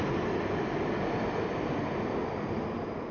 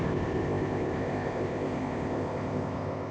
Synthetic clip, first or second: second